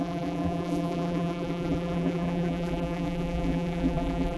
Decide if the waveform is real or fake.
fake